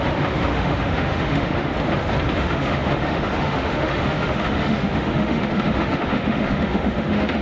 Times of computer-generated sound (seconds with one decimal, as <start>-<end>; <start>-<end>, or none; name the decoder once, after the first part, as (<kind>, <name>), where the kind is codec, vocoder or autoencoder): 0.0-1.7 (autoencoder, DAC-VAE); 2.4-7.4